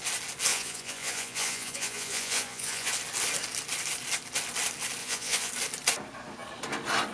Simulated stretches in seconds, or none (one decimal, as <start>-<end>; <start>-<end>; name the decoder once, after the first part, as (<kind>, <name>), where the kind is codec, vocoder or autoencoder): 0.5-2.9 (vocoder, Vocos); 5.0-5.5